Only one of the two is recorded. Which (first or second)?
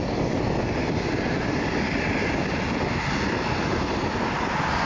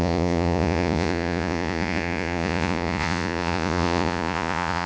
first